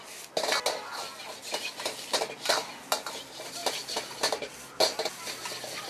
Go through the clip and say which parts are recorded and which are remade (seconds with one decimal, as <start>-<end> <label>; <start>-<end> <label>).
0.0-3.6 recorded; 3.6-4.5 remade; 4.5-5.9 recorded